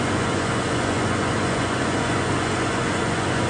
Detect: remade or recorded remade